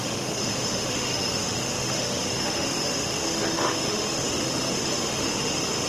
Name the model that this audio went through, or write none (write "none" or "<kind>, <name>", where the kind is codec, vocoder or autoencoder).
autoencoder, DAC-VAE